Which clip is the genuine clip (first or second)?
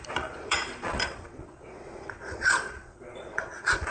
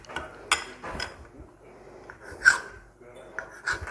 second